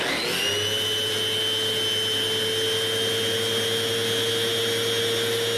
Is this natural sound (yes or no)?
yes